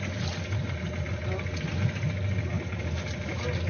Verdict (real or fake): real